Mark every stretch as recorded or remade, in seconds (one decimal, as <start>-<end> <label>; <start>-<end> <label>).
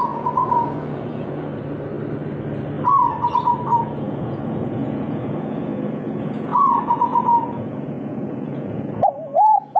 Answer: 0.0-1.5 remade; 1.5-3.8 recorded; 3.8-9.8 remade